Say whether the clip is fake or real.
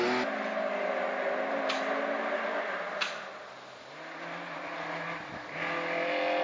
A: real